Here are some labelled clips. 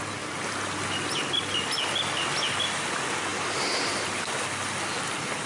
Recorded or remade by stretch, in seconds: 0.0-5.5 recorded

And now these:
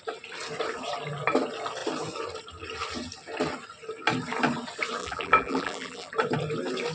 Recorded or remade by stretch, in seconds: 0.0-5.0 recorded; 5.0-6.1 remade; 6.1-6.9 recorded

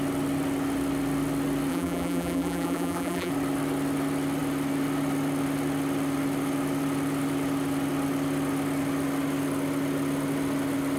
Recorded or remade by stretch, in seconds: 0.0-1.7 recorded; 1.7-3.3 remade; 3.3-11.0 recorded

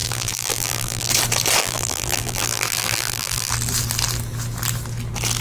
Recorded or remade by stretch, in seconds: 0.0-1.1 remade; 1.1-1.6 recorded; 1.6-3.5 remade; 3.5-5.4 recorded

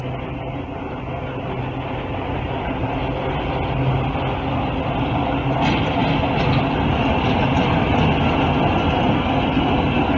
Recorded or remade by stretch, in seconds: 0.0-10.2 recorded

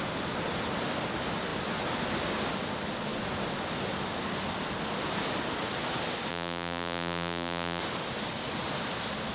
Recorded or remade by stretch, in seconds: 0.0-6.3 recorded; 6.3-7.8 remade; 7.8-9.3 recorded

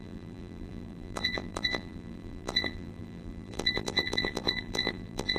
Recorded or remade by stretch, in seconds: 0.0-5.4 remade